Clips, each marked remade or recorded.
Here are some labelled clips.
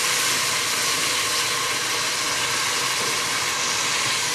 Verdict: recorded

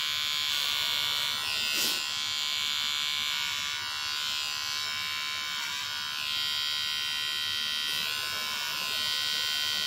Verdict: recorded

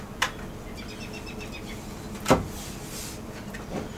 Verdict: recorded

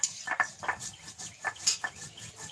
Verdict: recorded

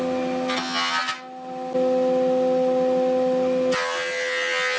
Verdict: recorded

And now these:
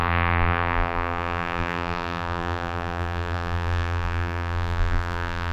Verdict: remade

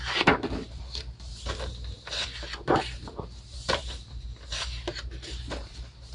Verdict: remade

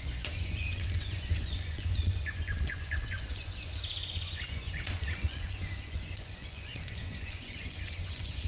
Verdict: remade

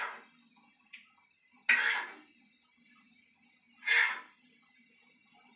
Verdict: recorded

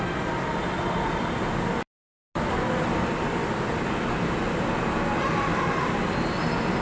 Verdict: recorded